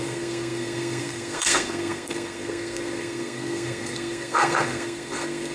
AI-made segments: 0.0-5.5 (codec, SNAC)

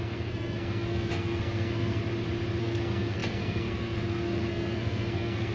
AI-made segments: 0.0-2.0 (codec, SNAC); 2.6-5.5

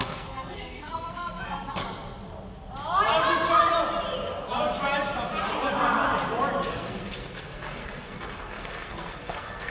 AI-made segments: 0.0-1.8 (codec, SNAC); 6.7-9.7